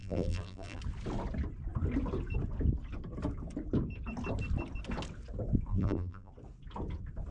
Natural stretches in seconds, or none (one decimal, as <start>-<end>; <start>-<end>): 0.8-5.7; 6.3-7.3